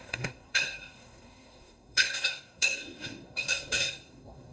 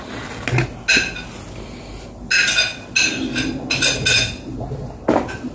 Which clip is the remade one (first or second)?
first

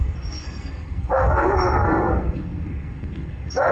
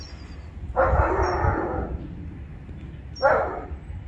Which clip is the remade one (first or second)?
first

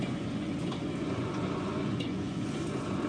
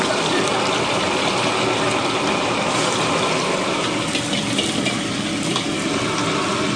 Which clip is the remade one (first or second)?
first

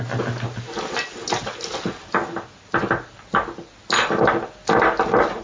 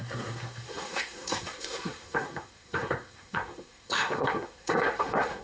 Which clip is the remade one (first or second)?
second